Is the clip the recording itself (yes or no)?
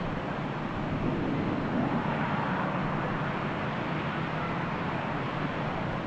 yes